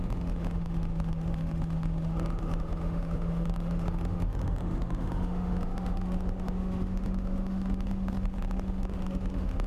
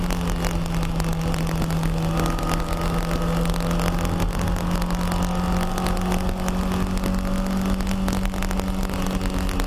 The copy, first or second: first